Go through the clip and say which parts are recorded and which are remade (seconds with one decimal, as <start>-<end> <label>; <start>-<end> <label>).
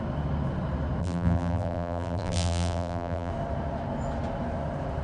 0.0-1.0 recorded; 1.0-3.3 remade; 3.3-5.0 recorded